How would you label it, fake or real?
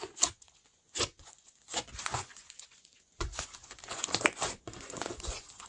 fake